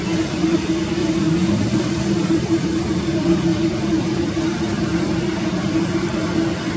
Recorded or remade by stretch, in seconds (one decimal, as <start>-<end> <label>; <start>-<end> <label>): 0.0-1.0 recorded; 1.0-3.2 remade; 3.2-6.8 recorded